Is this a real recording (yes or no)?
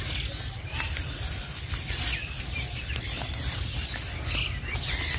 yes